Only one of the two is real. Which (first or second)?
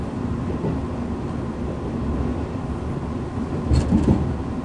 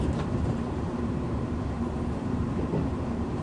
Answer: first